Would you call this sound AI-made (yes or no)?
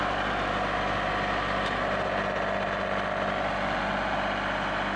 no